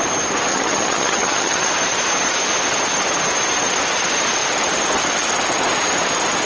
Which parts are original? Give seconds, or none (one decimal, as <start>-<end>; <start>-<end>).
0.0-0.5; 1.7-6.5